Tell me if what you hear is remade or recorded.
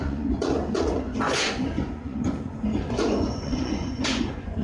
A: remade